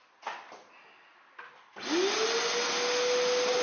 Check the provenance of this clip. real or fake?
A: real